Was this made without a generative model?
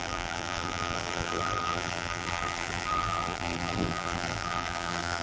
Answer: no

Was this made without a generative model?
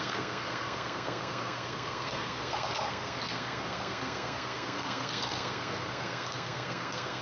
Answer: no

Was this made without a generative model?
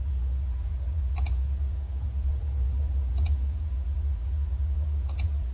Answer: no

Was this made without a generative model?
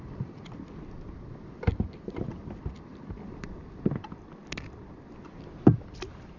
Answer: yes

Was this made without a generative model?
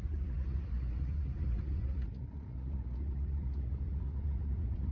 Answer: no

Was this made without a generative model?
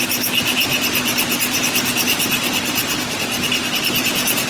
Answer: yes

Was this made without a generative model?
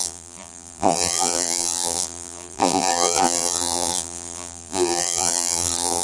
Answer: no